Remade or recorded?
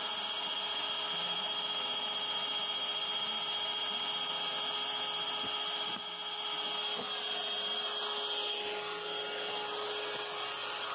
recorded